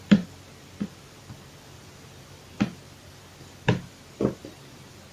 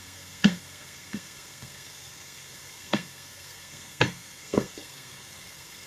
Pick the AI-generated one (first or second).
second